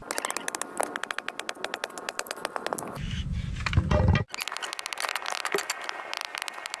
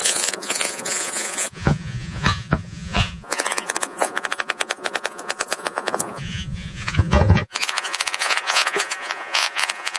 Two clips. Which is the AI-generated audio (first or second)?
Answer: second